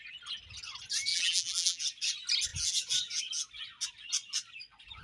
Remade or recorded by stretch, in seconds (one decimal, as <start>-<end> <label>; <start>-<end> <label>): 0.0-1.1 recorded; 1.1-1.8 remade; 1.8-5.0 recorded